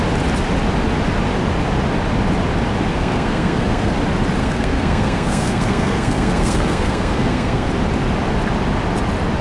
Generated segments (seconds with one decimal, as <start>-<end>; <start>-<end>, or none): 2.9-3.9; 4.4-7.7